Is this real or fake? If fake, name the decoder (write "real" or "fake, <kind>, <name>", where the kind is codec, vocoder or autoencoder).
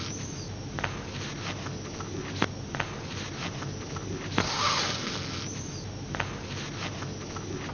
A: real